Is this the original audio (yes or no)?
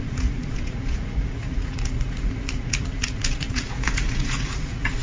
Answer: no